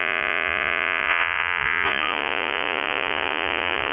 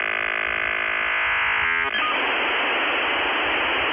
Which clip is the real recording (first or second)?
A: second